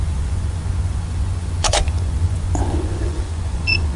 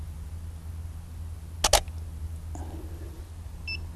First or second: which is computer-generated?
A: first